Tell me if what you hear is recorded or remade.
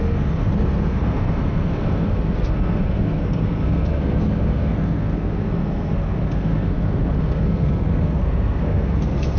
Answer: remade